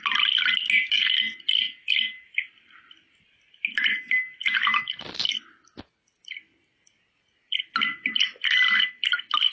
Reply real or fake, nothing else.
real